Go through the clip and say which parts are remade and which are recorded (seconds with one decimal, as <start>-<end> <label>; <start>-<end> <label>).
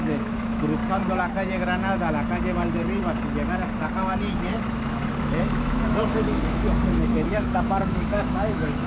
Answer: 0.0-0.8 remade; 0.8-5.2 recorded; 5.2-8.9 remade